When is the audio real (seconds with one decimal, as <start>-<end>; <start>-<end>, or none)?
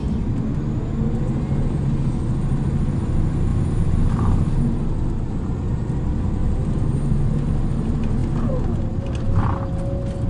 0.0-3.5; 4.6-10.3